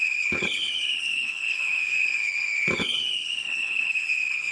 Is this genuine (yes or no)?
no